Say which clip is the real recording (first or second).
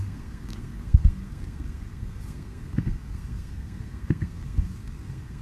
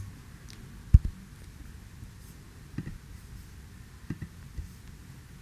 second